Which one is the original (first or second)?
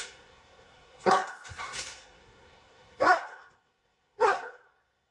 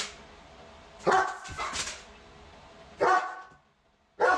second